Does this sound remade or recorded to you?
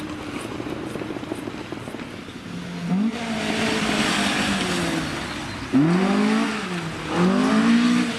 recorded